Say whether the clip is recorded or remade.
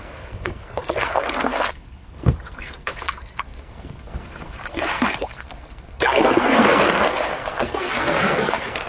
remade